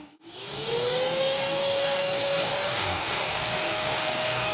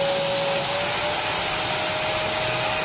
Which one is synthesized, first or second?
first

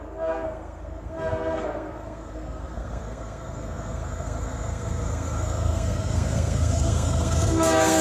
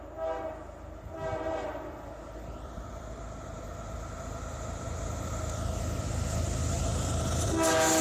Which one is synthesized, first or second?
first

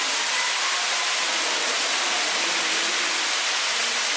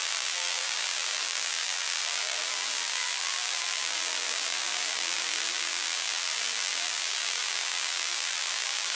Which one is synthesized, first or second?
second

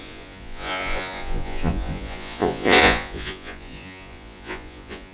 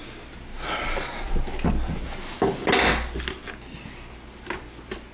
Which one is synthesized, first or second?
first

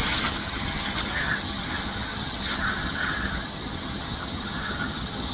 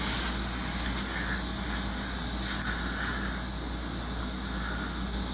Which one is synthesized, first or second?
first